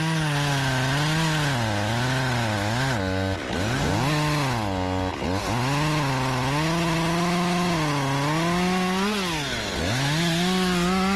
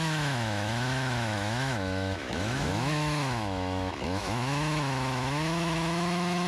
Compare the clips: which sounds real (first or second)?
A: first